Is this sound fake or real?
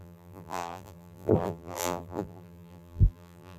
fake